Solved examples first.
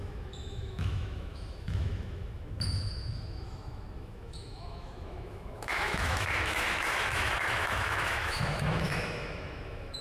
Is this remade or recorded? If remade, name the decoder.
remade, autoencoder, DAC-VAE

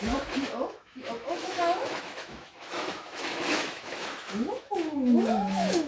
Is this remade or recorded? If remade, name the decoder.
remade, autoencoder, DAC-VAE